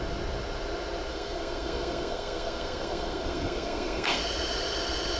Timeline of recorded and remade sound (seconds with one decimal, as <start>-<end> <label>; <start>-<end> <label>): 0.0-1.1 recorded; 1.1-4.2 remade; 4.2-5.2 recorded